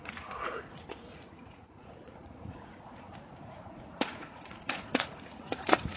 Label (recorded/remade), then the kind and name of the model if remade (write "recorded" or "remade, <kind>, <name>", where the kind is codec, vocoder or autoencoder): remade, vocoder, Vocos